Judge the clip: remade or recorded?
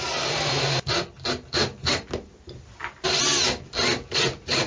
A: recorded